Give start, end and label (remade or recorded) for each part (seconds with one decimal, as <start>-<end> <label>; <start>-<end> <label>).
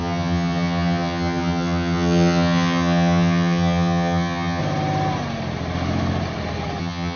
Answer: 0.0-4.6 remade; 4.6-6.8 recorded; 6.8-7.2 remade